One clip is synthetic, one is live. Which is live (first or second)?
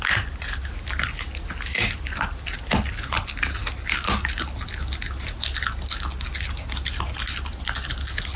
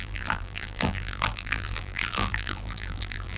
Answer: first